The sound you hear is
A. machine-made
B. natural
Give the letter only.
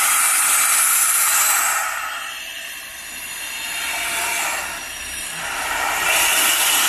B